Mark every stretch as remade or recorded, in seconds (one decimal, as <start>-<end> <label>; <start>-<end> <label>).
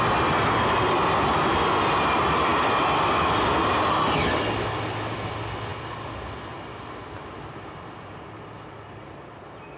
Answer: 0.0-9.8 recorded